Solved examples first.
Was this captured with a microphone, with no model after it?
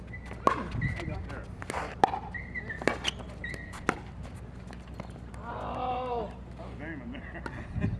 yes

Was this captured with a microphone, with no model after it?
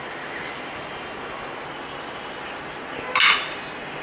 yes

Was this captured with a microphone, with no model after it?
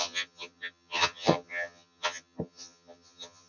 no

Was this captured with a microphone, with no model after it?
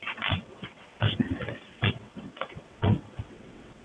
no